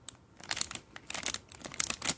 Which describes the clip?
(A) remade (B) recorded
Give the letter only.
B